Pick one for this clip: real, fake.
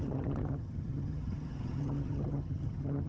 fake